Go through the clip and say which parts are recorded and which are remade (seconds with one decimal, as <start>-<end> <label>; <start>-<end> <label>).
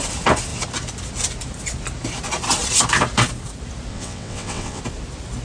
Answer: 0.0-3.9 recorded; 3.9-4.8 remade; 4.8-5.4 recorded